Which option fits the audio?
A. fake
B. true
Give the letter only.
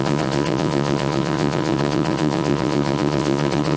A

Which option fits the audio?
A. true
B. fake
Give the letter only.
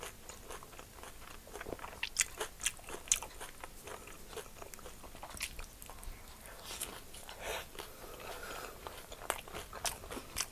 A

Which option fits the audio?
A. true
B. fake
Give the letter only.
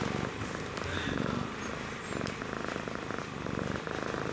A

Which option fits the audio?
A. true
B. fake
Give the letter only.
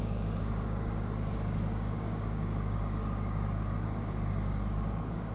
B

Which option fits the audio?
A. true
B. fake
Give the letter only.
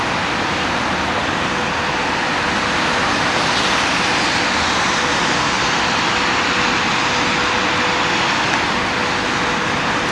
A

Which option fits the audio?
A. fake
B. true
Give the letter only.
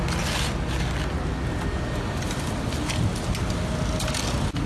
B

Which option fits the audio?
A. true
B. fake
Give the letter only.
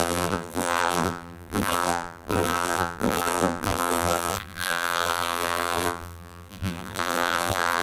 B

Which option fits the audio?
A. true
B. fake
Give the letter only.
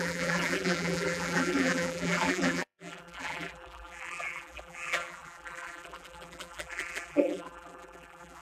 B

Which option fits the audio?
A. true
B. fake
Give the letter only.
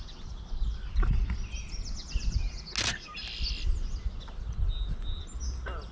A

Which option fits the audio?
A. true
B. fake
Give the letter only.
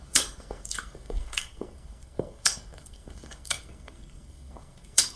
B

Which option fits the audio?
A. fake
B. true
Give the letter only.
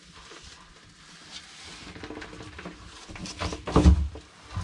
B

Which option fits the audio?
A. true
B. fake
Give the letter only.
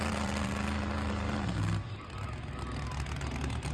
A